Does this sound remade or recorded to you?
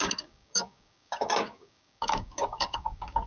remade